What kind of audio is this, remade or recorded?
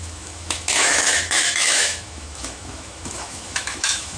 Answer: remade